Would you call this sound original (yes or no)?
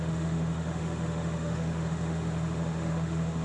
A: no